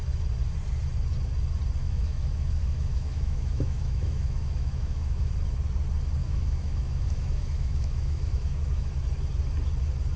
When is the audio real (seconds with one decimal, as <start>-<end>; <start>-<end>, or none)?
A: 0.0-1.8; 5.3-6.2; 8.9-10.2

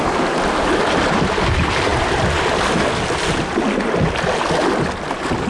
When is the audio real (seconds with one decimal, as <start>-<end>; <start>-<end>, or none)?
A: 0.0-5.5

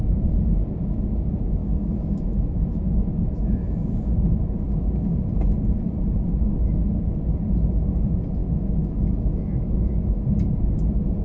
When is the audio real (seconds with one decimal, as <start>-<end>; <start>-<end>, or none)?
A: 0.0-1.6; 4.1-8.4; 10.2-11.2